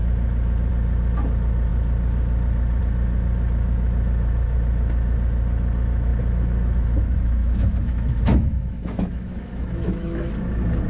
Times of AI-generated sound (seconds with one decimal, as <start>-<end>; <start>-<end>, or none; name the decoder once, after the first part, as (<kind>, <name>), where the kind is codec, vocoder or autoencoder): 7.4-10.3 (autoencoder, DAC-VAE)